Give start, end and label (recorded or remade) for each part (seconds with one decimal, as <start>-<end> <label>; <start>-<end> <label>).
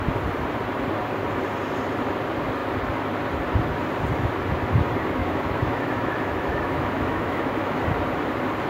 0.0-5.2 recorded; 5.2-7.8 remade; 7.8-8.7 recorded